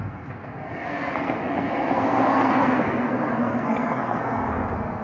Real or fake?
fake